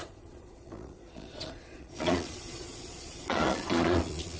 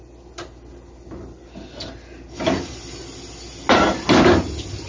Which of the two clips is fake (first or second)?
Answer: first